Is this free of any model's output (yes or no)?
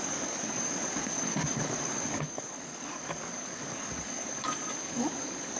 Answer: no